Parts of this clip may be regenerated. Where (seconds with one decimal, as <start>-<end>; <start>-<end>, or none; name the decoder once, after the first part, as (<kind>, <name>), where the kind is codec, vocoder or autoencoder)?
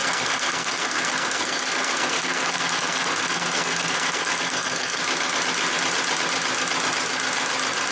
0.0-5.0 (codec, SNAC)